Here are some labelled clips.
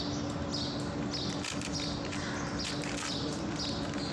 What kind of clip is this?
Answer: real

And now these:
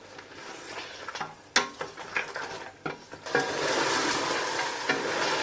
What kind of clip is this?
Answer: real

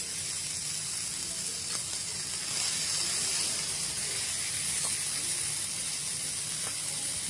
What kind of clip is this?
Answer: real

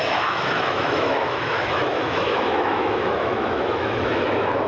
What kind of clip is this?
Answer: fake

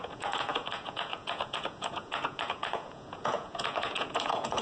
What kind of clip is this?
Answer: fake